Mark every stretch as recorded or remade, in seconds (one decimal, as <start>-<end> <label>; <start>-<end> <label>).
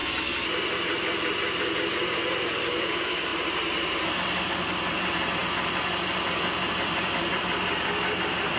0.0-2.6 recorded; 2.6-3.3 remade; 3.3-4.4 recorded; 4.4-5.4 remade; 5.4-6.0 recorded; 6.0-8.6 remade